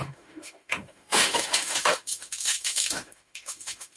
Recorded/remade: remade